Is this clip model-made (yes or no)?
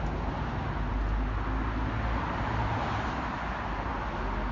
no